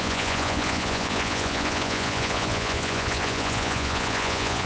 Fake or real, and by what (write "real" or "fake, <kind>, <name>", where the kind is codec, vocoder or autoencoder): fake, vocoder, Vocos